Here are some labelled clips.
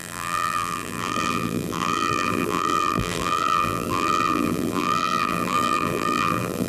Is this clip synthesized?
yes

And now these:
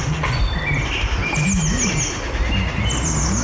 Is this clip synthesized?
no